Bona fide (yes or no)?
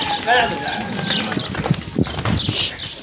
yes